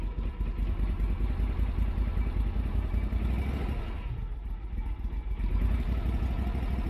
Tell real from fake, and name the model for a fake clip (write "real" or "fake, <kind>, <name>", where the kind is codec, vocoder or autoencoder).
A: real